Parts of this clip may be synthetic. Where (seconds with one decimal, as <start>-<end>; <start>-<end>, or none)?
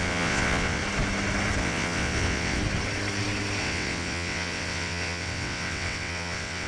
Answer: 0.0-0.8; 1.6-2.6; 3.6-6.7